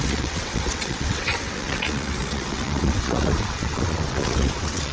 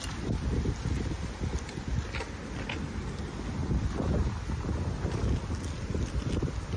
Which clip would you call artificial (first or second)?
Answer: first